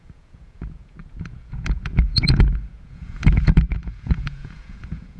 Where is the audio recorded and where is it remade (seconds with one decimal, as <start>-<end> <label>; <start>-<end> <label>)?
0.0-5.2 remade